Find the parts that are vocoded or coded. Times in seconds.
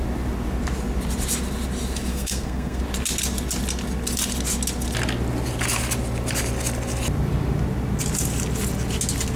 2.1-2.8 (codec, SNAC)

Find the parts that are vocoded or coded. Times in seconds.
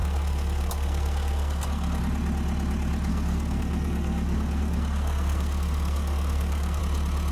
0.0-2.0 (codec, SNAC); 3.1-6.8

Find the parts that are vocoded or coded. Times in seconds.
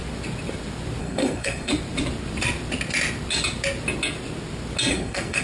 1.0-1.7 (codec, SNAC); 4.9-5.4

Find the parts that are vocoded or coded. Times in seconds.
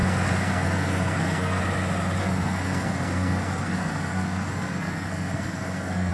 0.0-1.6 (codec, SNAC); 2.2-6.1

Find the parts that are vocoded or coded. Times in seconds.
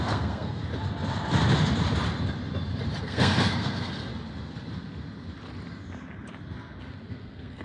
0.0-0.7 (codec, SNAC); 3.0-4.1; 7.1-7.6